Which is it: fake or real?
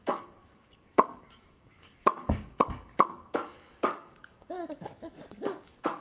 fake